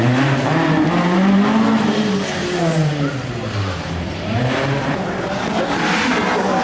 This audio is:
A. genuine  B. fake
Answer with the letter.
B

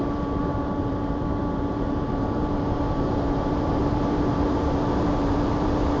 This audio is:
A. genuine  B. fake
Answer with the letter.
B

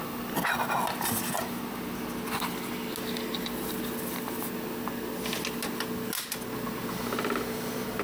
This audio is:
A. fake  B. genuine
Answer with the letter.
B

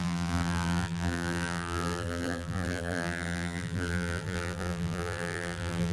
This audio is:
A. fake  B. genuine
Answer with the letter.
A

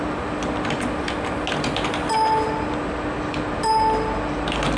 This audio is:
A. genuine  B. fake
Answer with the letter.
A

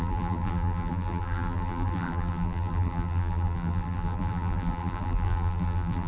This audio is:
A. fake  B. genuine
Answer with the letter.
A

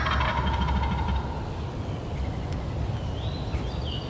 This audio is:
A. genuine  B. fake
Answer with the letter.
A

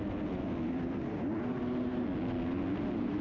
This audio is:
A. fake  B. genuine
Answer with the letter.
B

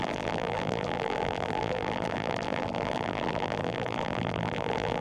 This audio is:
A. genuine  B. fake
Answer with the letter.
B